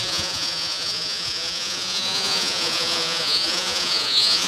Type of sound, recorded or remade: remade